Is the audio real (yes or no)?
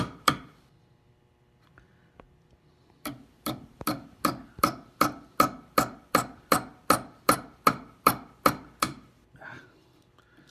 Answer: no